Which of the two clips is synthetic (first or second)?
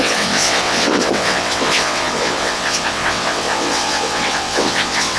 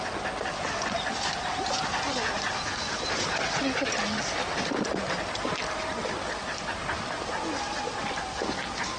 first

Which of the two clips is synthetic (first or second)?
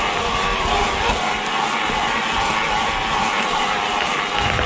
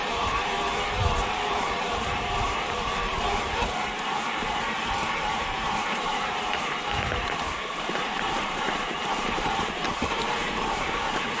second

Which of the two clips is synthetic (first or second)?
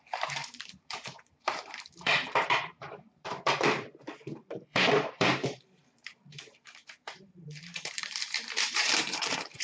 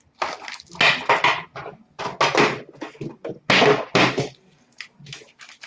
first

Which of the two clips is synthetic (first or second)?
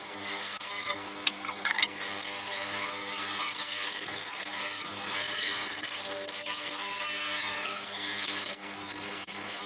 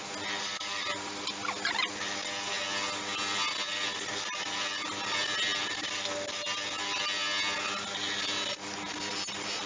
first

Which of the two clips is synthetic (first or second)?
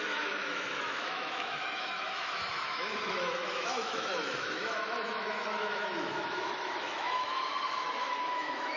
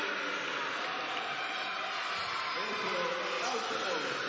first